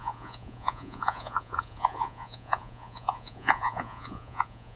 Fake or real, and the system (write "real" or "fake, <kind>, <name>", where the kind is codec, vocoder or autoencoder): fake, vocoder, Vocos